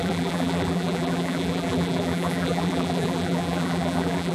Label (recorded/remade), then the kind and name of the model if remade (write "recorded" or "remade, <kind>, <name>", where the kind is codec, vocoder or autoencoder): remade, vocoder, BigVGAN v2